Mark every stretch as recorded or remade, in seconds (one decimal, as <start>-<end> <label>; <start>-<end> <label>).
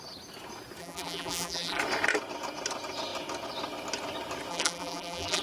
0.0-0.8 recorded; 0.8-1.8 remade; 1.8-4.5 recorded; 4.5-5.4 remade